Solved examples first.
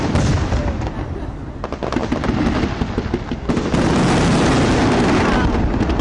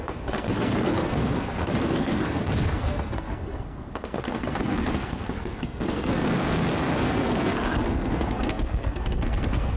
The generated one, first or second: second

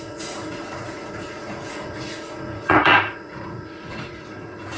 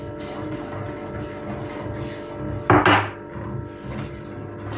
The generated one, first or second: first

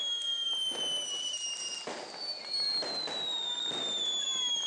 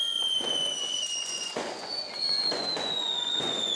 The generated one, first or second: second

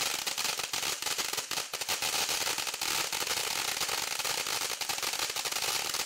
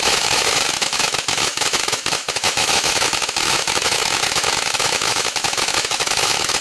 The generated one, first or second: second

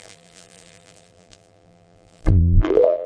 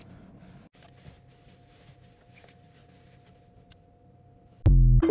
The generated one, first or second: first